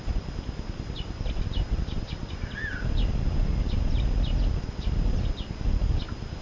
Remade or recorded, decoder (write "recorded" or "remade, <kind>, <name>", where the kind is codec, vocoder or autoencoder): recorded